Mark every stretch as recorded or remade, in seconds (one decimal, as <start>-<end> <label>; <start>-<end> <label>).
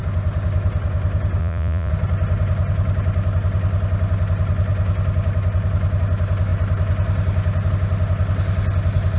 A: 0.0-1.4 recorded; 1.4-1.9 remade; 1.9-9.2 recorded